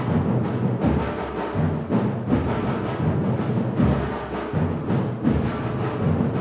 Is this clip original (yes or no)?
yes